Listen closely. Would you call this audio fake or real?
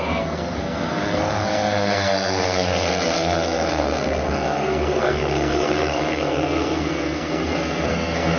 fake